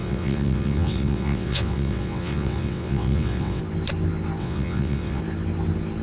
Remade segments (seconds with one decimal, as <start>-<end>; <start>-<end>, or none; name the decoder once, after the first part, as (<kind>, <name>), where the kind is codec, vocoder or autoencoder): 0.0-3.6 (vocoder, WaveNeXt); 4.4-5.2

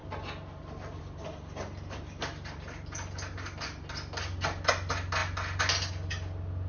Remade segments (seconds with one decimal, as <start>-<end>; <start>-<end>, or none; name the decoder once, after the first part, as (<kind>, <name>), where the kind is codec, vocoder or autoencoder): none